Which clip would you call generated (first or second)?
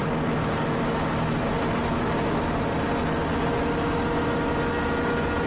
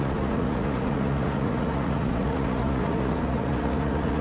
second